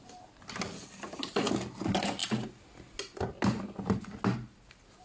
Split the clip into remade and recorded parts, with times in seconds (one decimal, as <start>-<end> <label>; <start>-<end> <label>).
0.0-5.0 recorded